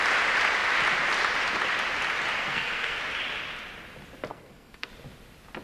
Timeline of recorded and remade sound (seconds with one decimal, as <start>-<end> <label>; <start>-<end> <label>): 0.0-2.4 recorded; 2.4-3.0 remade; 3.0-4.3 recorded; 4.3-4.9 remade; 4.9-5.6 recorded